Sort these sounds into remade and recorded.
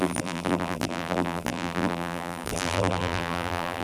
remade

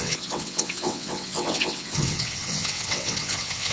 remade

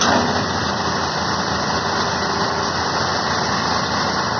recorded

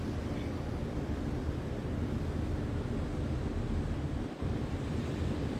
recorded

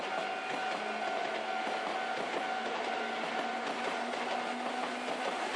recorded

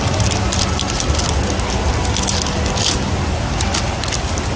recorded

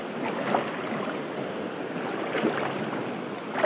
recorded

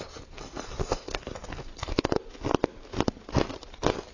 recorded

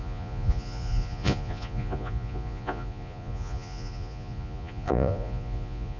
remade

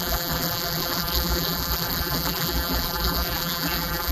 remade